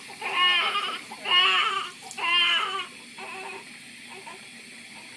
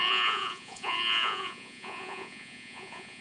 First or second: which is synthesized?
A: second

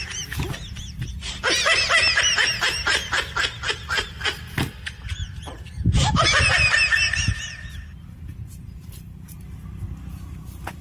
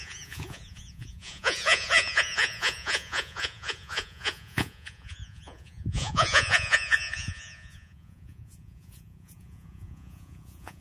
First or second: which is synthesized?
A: second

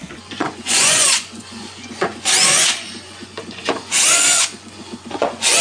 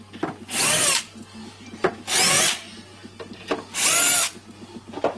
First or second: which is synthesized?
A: first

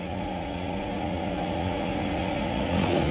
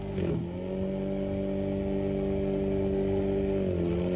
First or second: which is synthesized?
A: first